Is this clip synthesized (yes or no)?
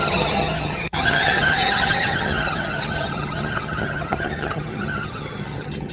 yes